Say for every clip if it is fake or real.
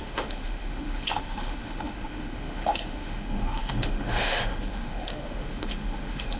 fake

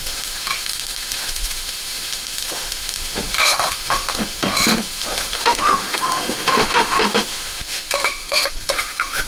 fake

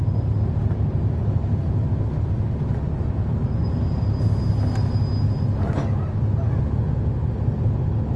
real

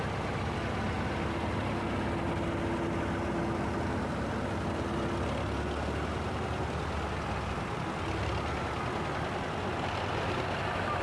real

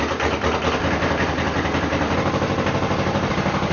real